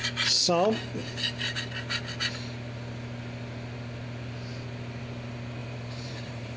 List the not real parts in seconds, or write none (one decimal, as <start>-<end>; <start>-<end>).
5.6-6.6